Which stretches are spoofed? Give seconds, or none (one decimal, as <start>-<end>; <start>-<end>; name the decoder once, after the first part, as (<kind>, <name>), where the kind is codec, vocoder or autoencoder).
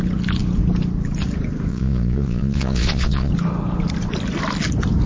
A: 1.7-3.3 (vocoder, Vocos)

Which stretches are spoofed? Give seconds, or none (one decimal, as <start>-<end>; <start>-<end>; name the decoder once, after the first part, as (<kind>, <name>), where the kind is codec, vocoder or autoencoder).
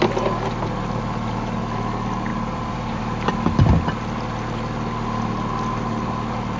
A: 2.3-3.0 (vocoder, BigVGAN v2)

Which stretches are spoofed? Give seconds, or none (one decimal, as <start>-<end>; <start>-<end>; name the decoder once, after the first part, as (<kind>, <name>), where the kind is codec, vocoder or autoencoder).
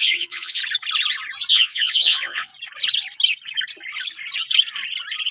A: 0.0-0.6 (vocoder, Vocos); 1.5-2.5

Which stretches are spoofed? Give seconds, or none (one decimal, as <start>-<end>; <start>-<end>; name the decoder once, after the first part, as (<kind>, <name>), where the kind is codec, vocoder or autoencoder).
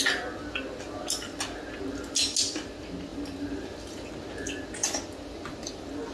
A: 3.1-4.1 (vocoder, BigVGAN v2); 4.8-6.1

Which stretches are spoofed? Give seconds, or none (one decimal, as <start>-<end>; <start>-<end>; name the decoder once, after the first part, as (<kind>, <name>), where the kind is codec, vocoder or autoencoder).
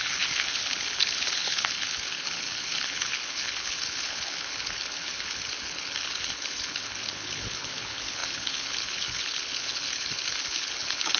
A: 0.0-11.2 (codec, HILCodec)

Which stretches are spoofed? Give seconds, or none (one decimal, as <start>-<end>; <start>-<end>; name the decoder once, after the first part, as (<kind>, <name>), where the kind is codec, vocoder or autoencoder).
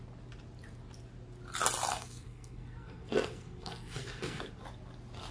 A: 1.9-4.4 (codec, SNAC)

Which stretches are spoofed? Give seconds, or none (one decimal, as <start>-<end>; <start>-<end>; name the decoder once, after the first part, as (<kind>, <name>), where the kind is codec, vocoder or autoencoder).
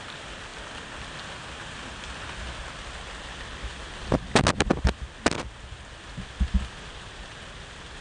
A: none